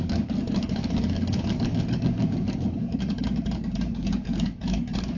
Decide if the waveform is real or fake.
fake